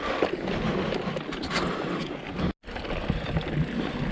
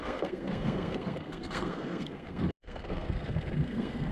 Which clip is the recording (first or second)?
first